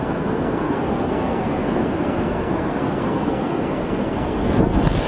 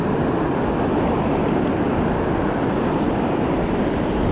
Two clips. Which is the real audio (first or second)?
second